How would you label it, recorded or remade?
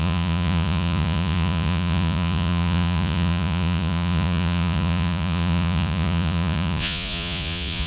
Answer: remade